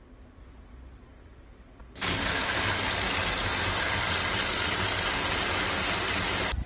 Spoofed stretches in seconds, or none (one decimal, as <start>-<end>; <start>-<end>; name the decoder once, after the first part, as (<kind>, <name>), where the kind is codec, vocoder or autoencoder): none